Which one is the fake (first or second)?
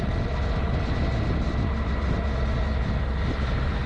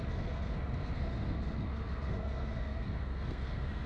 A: second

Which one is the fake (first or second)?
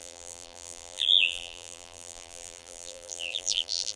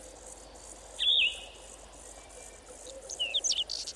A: first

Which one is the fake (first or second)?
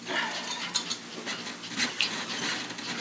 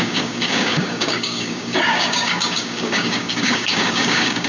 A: second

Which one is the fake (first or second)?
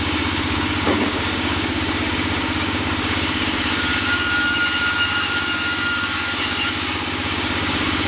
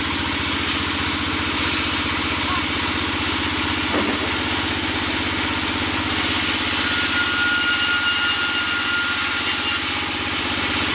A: first